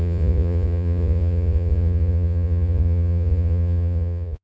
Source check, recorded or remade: remade